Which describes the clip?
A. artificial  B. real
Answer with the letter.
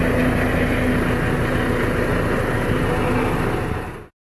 B